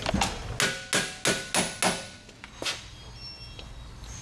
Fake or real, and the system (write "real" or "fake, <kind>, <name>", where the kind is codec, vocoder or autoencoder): real